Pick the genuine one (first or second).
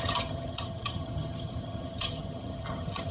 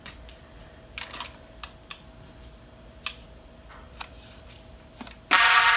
second